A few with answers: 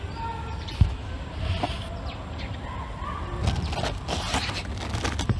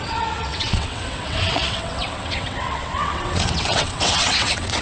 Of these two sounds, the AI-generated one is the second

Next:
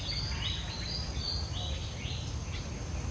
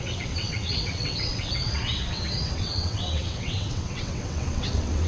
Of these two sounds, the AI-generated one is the second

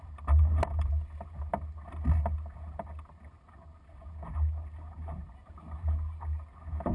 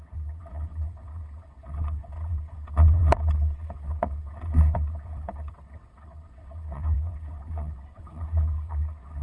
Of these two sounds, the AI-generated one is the second